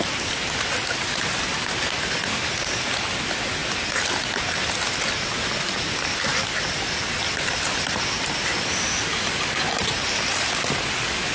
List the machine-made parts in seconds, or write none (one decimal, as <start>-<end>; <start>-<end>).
none